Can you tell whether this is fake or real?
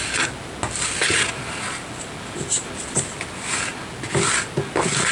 real